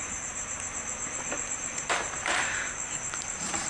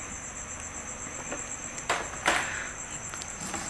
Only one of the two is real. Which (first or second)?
second